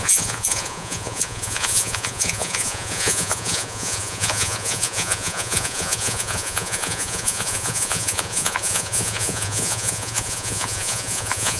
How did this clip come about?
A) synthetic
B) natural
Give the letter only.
A